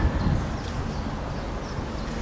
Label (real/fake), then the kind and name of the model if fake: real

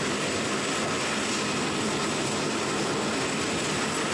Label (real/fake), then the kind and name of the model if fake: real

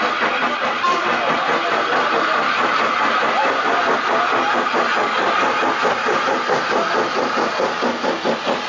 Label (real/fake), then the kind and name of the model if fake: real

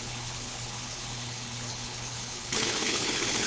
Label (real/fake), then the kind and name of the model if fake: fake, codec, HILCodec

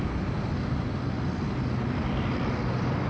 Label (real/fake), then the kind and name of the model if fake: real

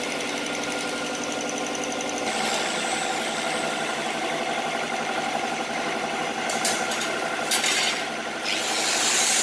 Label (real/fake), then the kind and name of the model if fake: real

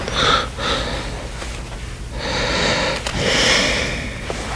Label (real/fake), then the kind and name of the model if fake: real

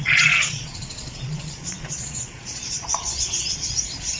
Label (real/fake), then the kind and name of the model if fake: fake, vocoder, Vocos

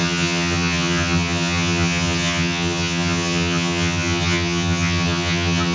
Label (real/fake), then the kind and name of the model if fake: fake, vocoder, HiFi-GAN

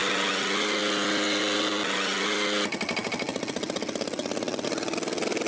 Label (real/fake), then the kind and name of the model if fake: real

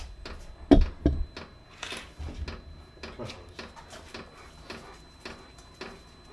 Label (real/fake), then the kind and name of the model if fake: real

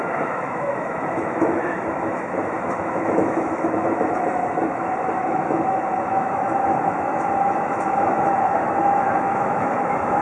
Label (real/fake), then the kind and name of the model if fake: fake, autoencoder, DAC-VAE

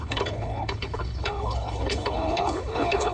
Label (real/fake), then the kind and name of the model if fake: fake, codec, HILCodec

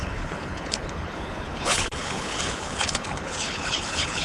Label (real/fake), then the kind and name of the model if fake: fake, codec, HILCodec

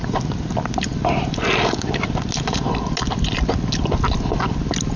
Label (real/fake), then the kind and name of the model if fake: real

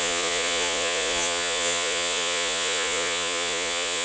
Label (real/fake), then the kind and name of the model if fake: fake, vocoder, Vocos